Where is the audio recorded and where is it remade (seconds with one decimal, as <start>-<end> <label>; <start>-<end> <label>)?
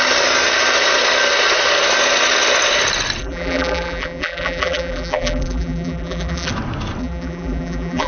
0.0-3.2 recorded; 3.2-6.5 remade; 6.5-7.0 recorded; 7.0-8.1 remade